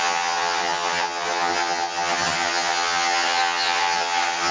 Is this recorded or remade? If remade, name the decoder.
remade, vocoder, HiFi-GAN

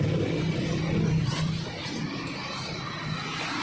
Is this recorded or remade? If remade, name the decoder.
recorded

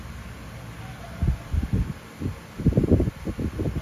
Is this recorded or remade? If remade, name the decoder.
recorded